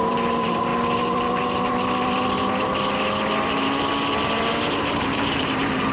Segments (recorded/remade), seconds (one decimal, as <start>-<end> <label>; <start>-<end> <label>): 0.0-0.7 remade; 0.7-4.2 recorded; 4.2-5.9 remade